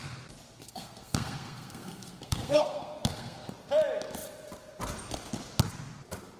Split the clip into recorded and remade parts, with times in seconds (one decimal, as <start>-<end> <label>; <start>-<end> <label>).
0.0-0.6 recorded; 0.6-3.5 remade; 3.5-6.4 recorded